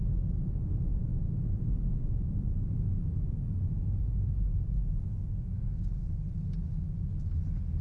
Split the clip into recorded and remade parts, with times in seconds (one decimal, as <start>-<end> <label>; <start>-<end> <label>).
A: 0.0-7.8 recorded